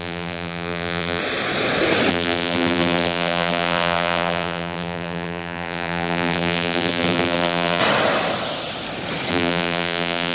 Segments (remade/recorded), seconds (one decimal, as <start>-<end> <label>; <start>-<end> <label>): 0.0-1.2 remade; 1.2-2.1 recorded; 2.1-7.8 remade; 7.8-9.3 recorded; 9.3-10.3 remade